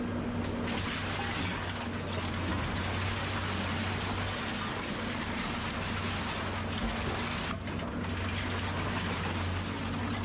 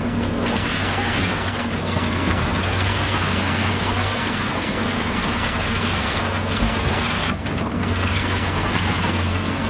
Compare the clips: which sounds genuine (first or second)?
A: first